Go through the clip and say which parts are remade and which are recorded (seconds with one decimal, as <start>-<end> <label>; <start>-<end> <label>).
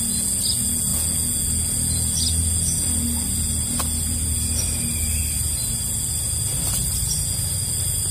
0.0-8.1 recorded